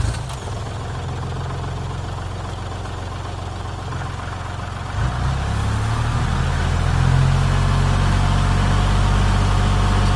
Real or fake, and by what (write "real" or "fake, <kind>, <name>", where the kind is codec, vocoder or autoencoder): real